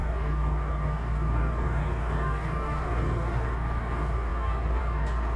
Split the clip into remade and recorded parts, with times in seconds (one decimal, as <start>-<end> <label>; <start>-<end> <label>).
0.0-5.4 remade